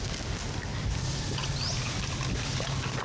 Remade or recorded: recorded